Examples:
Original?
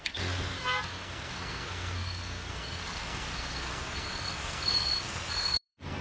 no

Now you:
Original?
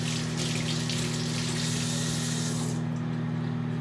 yes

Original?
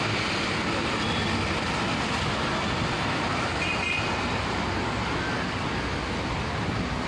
yes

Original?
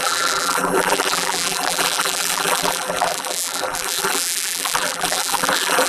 no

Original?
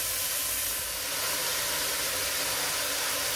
yes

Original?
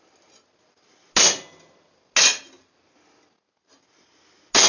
yes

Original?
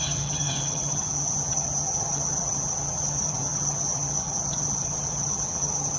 no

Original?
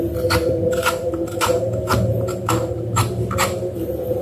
no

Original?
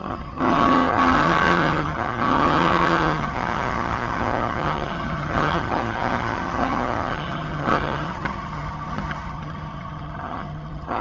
no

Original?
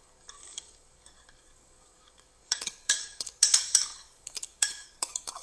no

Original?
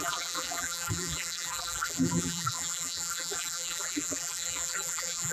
no